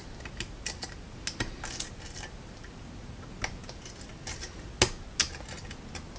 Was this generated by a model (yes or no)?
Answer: no